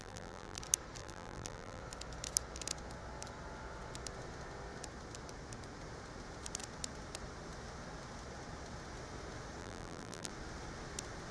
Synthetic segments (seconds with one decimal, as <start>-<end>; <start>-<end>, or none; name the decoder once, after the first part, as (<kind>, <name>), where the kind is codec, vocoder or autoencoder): 0.0-0.6 (vocoder, BigVGAN v2); 1.0-1.8; 9.6-10.3